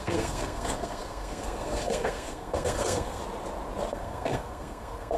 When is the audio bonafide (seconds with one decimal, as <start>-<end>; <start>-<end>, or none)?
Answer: 3.2-3.9